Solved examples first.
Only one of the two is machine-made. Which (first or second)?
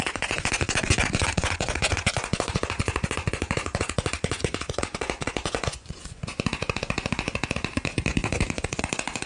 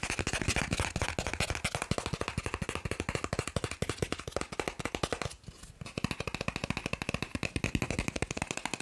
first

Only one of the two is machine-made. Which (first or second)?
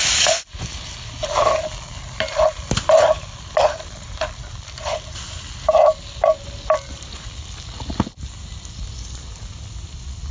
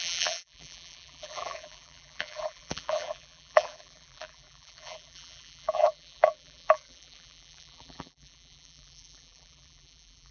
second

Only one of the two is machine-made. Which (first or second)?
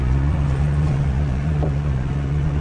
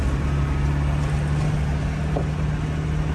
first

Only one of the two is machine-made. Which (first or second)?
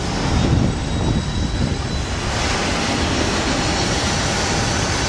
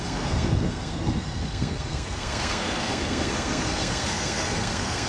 second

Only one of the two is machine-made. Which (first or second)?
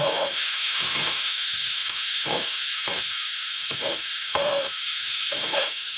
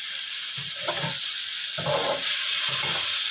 first